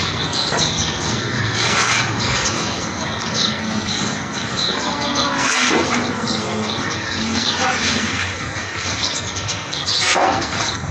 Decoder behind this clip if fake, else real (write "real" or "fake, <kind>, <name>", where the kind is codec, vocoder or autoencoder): fake, codec, SNAC